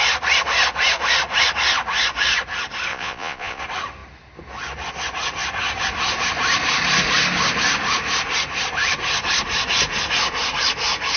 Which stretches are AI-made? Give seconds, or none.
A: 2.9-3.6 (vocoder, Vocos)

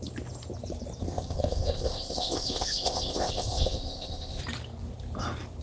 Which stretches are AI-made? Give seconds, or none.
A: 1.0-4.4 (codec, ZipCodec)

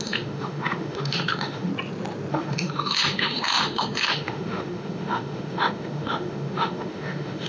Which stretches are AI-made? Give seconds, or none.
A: 0.0-1.7 (autoencoder, DAC-VAE); 2.3-7.5